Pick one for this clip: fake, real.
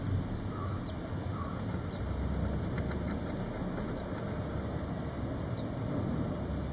real